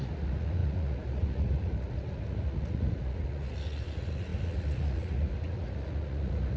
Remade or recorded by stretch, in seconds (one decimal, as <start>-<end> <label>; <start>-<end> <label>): 0.0-6.6 remade